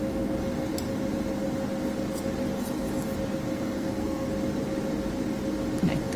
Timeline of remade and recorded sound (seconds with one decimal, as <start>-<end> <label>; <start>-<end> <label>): 0.0-3.5 recorded; 3.5-4.3 remade; 4.3-6.2 recorded